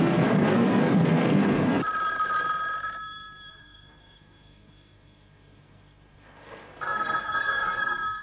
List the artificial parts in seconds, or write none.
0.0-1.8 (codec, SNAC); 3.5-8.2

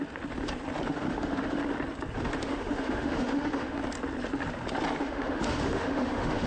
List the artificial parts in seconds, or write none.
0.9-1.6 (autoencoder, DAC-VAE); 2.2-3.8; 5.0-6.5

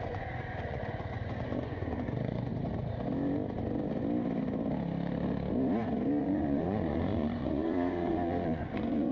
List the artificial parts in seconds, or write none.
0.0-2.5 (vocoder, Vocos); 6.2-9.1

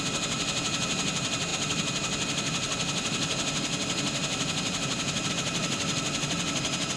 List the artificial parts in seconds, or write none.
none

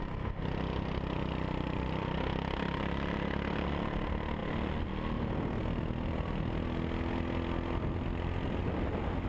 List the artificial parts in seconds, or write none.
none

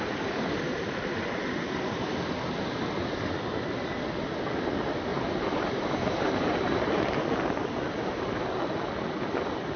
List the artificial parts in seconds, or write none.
5.1-7.0 (vocoder, BigVGAN v2)

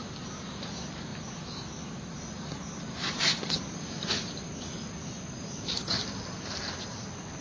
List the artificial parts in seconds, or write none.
1.1-5.5 (vocoder, BigVGAN v2)